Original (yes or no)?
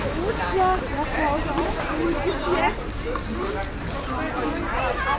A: yes